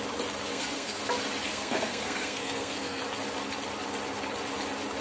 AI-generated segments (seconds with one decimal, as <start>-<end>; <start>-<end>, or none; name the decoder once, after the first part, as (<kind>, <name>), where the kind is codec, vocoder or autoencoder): 0.5-1.0 (codec, SNAC); 1.5-3.0